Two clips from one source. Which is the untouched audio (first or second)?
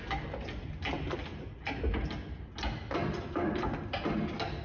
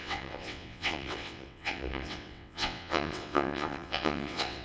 first